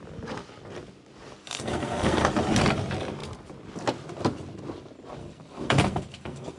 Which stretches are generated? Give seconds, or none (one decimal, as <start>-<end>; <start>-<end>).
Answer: 1.4-2.3; 5.2-6.6